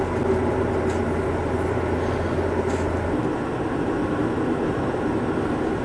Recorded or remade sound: recorded